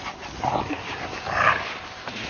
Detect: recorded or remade recorded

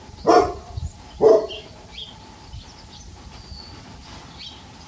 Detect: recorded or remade recorded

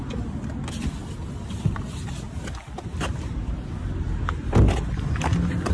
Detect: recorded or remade recorded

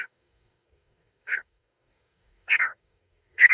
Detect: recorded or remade remade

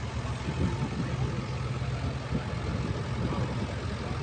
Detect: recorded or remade recorded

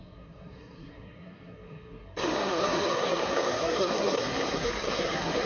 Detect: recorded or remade remade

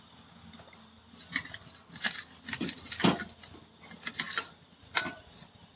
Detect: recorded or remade recorded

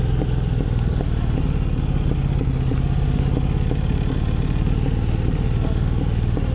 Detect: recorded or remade recorded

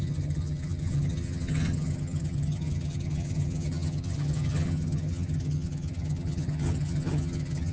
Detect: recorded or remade remade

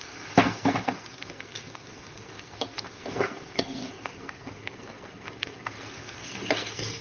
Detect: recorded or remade remade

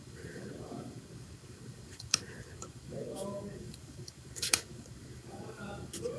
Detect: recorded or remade remade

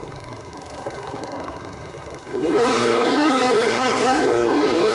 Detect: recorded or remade remade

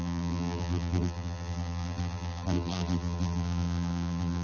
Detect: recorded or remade remade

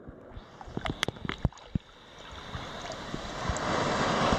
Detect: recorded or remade recorded